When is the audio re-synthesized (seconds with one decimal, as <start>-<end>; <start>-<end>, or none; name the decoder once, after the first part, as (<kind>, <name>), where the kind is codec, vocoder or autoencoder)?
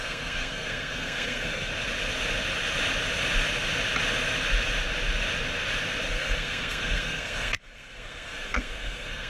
0.0-1.7 (codec, SNAC); 6.1-9.3